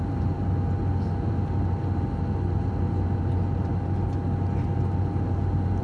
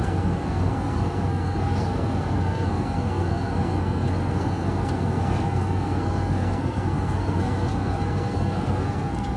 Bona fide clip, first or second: first